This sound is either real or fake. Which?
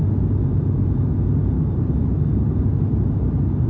real